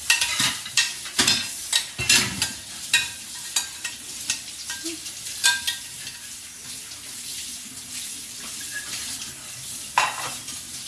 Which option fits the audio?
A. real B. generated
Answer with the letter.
A